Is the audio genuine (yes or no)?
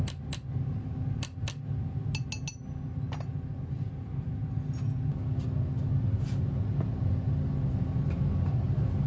yes